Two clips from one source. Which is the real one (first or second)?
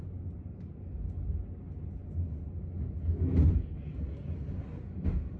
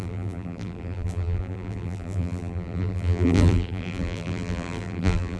first